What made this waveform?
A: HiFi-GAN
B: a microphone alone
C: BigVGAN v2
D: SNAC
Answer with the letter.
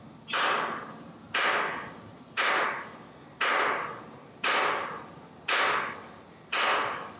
B